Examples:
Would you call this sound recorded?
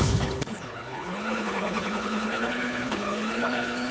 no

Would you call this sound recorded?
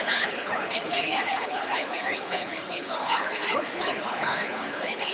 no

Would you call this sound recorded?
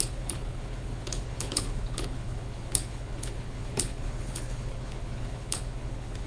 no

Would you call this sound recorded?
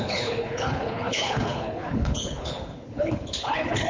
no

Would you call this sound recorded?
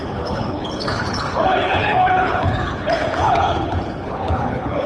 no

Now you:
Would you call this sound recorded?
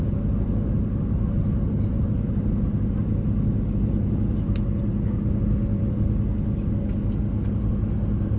yes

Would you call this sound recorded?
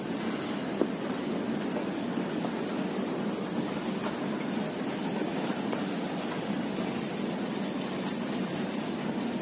yes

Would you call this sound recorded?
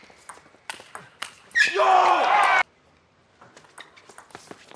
yes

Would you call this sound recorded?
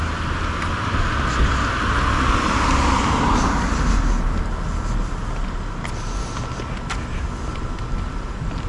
yes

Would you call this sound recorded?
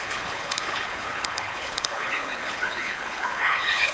no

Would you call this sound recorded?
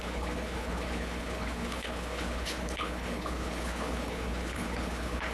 no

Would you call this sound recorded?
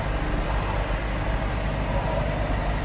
yes